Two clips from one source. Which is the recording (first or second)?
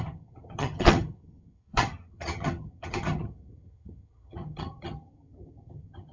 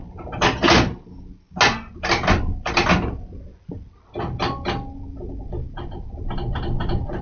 second